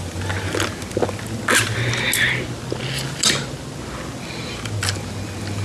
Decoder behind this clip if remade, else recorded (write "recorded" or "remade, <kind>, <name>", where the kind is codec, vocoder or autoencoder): recorded